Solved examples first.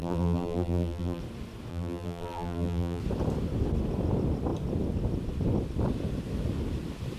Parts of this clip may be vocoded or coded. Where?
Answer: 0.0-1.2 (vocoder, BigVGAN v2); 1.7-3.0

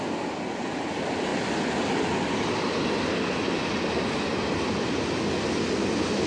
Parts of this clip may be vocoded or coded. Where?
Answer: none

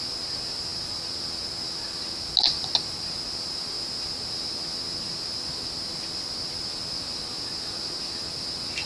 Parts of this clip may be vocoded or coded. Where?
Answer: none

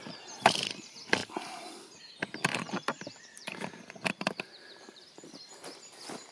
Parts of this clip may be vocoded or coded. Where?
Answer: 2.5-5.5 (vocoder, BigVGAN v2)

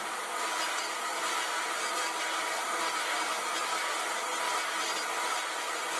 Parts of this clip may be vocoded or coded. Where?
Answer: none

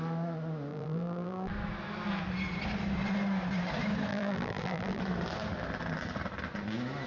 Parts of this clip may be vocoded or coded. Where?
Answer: 0.7-1.5 (vocoder, BigVGAN v2); 4.1-5.0